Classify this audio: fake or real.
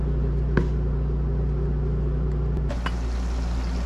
real